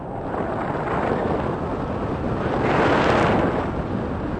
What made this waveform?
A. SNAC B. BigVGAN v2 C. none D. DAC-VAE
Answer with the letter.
C